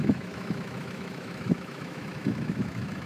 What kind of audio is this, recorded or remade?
remade